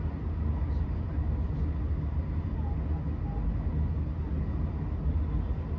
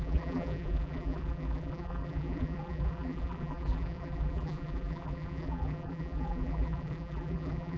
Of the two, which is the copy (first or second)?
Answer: second